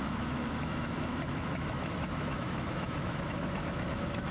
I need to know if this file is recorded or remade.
remade